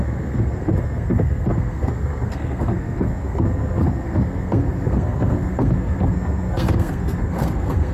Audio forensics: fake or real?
fake